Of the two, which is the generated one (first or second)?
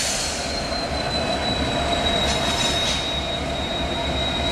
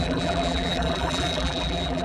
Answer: second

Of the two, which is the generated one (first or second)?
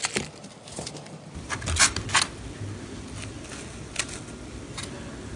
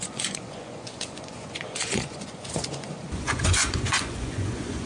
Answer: second